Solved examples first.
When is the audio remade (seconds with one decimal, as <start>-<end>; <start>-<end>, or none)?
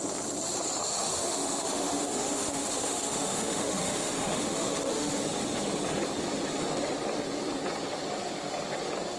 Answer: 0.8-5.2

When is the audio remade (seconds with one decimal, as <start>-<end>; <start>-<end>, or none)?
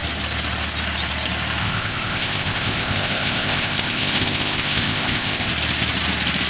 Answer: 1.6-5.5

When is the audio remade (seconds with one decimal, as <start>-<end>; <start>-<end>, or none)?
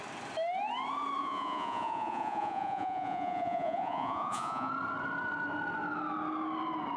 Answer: 1.2-4.7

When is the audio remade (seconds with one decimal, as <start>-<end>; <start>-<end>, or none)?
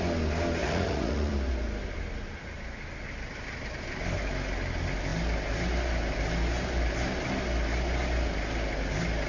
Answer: 0.6-1.3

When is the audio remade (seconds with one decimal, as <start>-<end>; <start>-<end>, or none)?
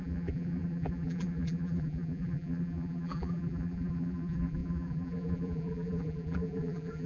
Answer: 0.0-7.1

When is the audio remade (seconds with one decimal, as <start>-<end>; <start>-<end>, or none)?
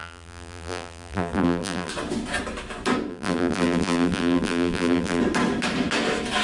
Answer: 0.0-1.9; 3.1-5.2